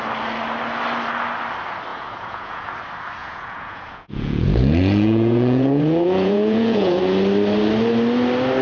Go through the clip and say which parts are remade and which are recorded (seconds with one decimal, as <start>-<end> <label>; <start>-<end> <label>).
0.0-1.9 recorded; 1.9-2.8 remade; 2.8-3.2 recorded; 3.2-7.0 remade; 7.0-8.6 recorded